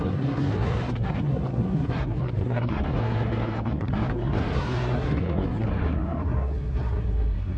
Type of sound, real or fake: fake